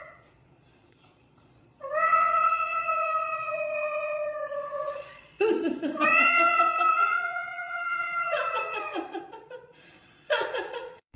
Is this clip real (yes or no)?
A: no